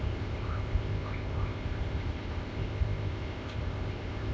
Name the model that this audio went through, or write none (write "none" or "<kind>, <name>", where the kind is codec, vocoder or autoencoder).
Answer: codec, ZipCodec